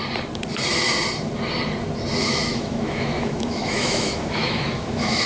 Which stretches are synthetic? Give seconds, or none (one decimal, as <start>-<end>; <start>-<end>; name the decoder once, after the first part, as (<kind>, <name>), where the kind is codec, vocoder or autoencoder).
2.2-5.3 (autoencoder, DAC-VAE)